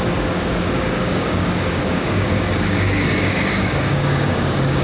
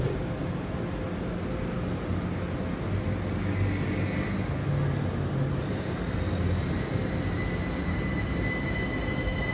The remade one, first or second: first